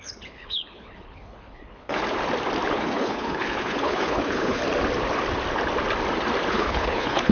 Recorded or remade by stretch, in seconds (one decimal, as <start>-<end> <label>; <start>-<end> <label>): 0.0-2.0 remade; 2.0-2.7 recorded; 2.7-4.6 remade; 4.6-6.5 recorded; 6.5-7.3 remade